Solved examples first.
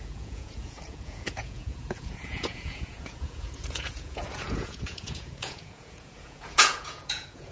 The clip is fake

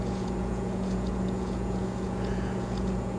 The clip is fake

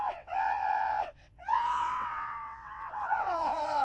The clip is fake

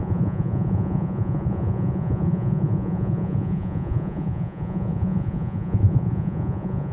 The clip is fake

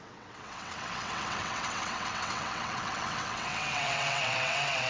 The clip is fake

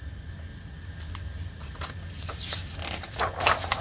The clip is real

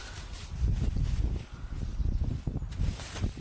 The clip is real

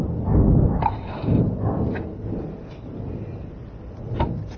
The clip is real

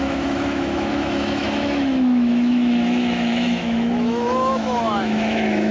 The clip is fake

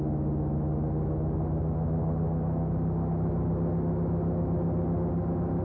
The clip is real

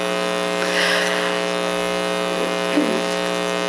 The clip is fake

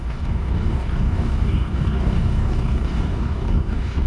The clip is fake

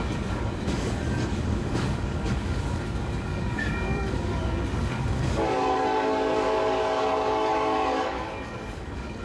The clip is fake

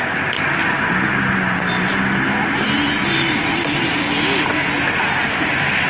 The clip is real